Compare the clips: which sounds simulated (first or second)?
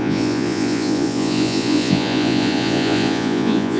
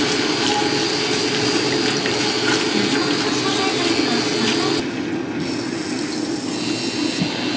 first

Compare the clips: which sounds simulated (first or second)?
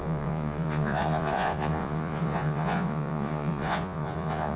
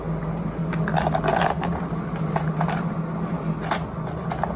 first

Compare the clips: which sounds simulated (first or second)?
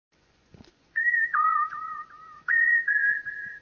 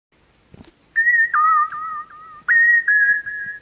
first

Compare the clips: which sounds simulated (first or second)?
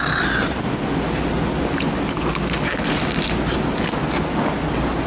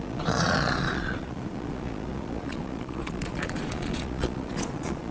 second